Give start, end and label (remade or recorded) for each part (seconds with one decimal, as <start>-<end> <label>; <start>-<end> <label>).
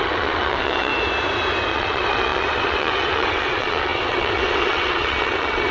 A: 0.0-0.9 remade; 0.9-1.7 recorded; 1.7-5.7 remade